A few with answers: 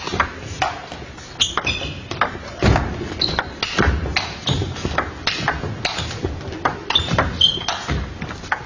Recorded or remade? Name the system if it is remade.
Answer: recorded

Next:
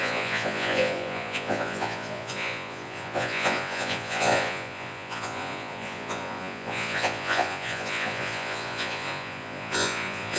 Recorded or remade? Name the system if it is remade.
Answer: remade, vocoder, Vocos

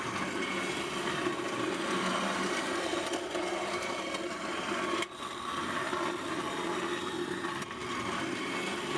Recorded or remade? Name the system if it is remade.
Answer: recorded